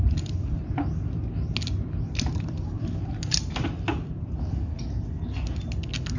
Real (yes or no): yes